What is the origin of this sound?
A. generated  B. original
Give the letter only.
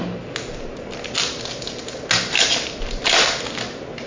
B